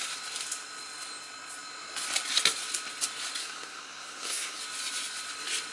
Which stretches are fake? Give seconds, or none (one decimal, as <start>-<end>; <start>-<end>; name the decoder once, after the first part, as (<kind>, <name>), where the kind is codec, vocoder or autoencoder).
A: 3.4-4.6 (codec, SNAC)